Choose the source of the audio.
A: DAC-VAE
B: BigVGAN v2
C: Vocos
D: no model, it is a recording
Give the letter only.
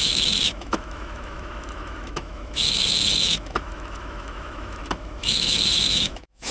A